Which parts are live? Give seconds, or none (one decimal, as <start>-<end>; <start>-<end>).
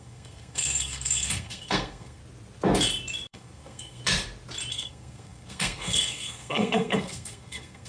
2.2-3.3; 4.0-4.7